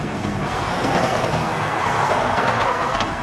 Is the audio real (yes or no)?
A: no